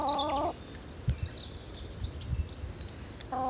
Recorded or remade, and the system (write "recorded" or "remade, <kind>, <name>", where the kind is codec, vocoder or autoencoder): recorded